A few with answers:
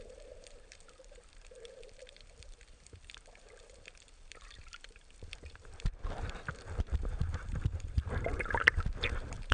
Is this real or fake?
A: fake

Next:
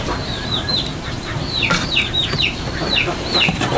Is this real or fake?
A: fake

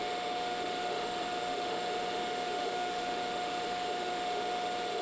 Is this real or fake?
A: fake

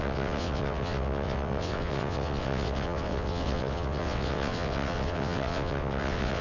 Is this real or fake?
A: fake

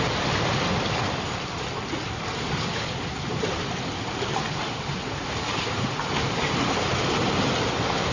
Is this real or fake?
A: real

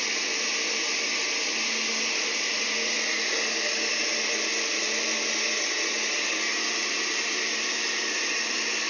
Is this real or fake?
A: real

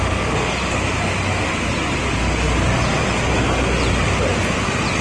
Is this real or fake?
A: real